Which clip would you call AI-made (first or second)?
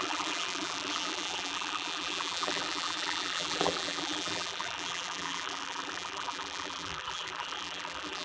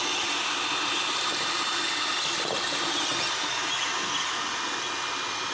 first